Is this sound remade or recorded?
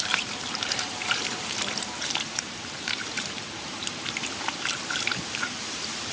remade